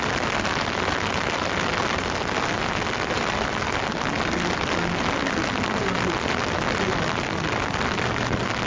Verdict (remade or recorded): recorded